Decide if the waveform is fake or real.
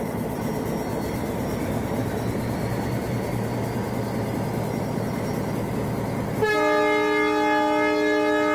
real